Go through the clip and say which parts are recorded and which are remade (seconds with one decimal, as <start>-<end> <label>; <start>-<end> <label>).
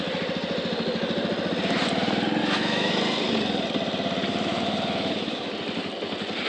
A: 0.0-2.4 recorded; 2.4-2.9 remade; 2.9-4.3 recorded; 4.3-5.5 remade; 5.5-6.5 recorded